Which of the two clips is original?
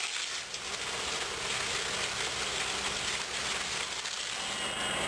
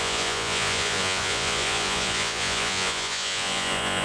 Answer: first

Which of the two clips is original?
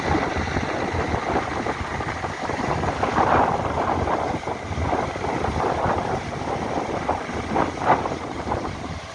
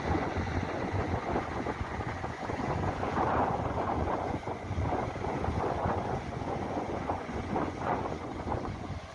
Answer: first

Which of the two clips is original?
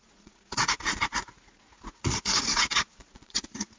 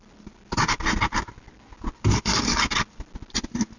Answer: second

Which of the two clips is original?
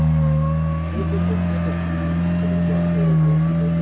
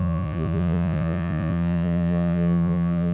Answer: first